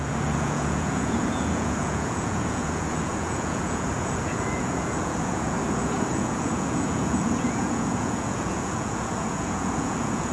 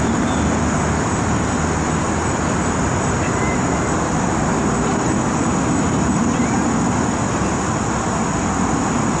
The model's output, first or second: first